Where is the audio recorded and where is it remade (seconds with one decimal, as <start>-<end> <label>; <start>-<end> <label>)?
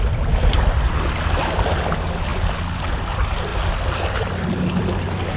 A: 0.0-5.4 recorded